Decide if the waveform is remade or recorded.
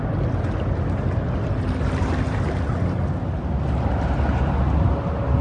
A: recorded